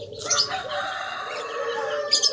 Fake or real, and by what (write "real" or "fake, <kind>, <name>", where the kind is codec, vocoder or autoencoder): real